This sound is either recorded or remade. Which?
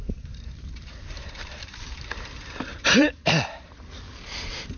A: remade